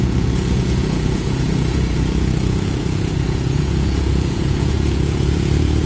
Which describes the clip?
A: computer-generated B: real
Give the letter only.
A